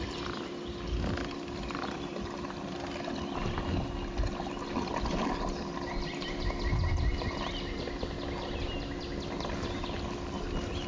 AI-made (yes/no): no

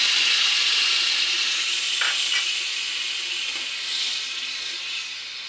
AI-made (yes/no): no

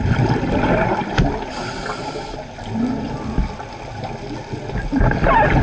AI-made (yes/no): no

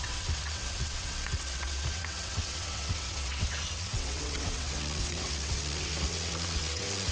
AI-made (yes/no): yes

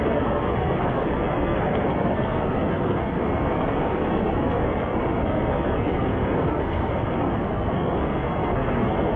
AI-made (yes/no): yes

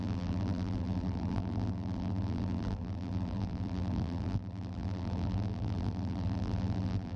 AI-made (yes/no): yes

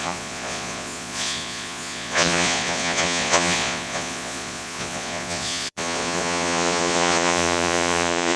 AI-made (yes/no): yes